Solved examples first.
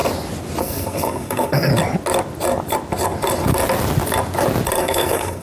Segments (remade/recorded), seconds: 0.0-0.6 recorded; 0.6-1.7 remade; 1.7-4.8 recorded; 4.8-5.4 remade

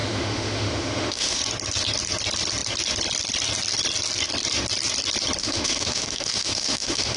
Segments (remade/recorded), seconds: 0.0-1.4 remade; 1.4-5.4 recorded; 5.4-7.2 remade